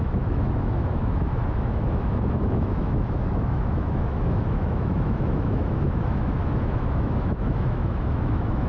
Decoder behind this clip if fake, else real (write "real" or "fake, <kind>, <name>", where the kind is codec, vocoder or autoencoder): fake, autoencoder, DAC-VAE